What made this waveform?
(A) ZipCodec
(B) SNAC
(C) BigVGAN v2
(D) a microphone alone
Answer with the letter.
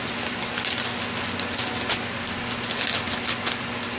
D